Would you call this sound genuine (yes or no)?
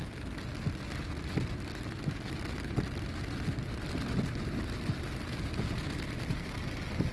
yes